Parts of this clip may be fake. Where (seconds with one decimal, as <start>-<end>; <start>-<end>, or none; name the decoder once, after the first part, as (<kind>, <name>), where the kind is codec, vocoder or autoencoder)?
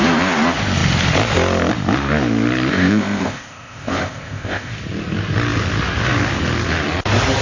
2.7-4.7 (codec, ZipCodec)